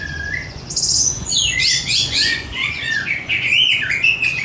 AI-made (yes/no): yes